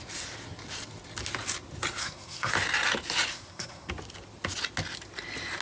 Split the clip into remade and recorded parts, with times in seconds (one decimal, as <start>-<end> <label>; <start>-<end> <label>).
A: 0.0-2.0 recorded; 2.0-2.5 remade; 2.5-3.3 recorded; 3.3-3.9 remade; 3.9-5.6 recorded